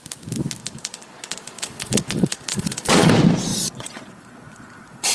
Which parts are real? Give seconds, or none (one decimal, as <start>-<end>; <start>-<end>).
0.0-0.6; 3.1-3.5